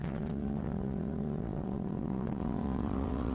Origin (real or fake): fake